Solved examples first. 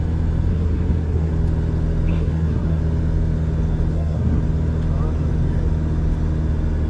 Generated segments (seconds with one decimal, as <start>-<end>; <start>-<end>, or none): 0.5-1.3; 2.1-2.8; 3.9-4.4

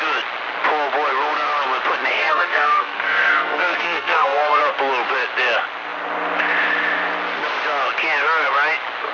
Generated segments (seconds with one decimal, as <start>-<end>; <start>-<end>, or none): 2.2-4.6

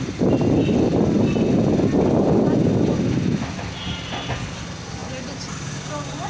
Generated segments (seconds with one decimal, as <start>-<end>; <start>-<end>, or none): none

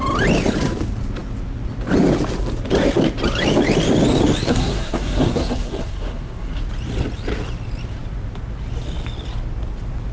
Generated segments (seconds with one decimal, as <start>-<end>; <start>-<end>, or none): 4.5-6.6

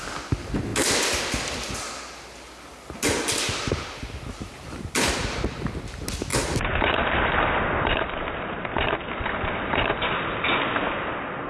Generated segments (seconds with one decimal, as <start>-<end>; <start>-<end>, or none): none